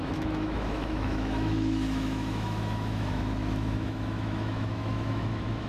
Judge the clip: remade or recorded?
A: remade